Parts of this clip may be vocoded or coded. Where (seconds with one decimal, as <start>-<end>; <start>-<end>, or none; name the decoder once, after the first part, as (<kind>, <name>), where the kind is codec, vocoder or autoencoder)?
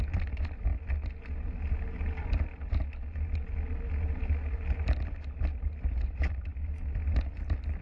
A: none